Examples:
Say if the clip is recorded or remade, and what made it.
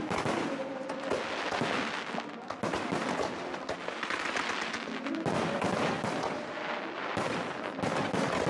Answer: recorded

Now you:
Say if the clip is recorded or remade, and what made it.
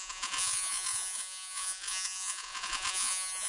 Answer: remade, vocoder, Vocos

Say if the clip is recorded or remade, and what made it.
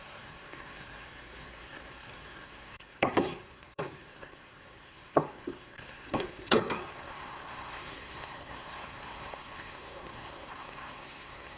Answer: remade, codec, SNAC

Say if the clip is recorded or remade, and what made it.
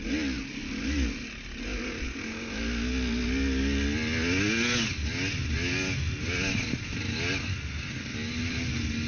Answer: recorded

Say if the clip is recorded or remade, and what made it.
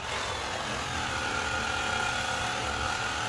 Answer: recorded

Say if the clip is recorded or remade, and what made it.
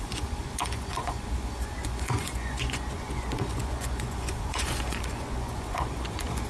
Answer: remade, vocoder, Vocos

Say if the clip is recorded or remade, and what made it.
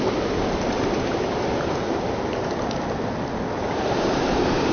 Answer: recorded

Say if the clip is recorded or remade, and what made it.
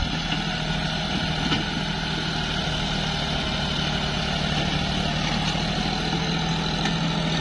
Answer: recorded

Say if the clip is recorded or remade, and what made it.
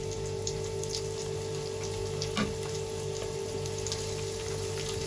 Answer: recorded